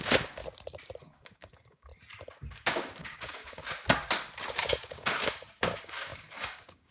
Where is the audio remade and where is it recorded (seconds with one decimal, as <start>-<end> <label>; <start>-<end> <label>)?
0.0-0.4 remade; 0.4-1.0 recorded; 1.0-1.9 remade; 1.9-2.5 recorded; 2.5-3.6 remade; 3.6-4.7 recorded; 4.7-6.9 remade